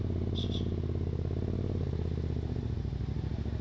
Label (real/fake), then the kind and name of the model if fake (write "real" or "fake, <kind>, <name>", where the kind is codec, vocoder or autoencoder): real